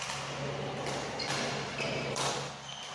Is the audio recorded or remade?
recorded